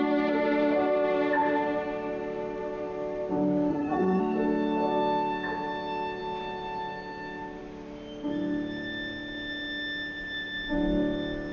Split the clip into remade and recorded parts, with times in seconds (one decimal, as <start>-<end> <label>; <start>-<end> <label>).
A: 0.0-3.7 recorded; 3.7-4.2 remade; 4.2-11.5 recorded